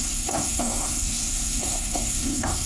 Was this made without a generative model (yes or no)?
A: no